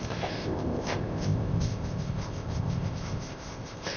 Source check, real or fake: fake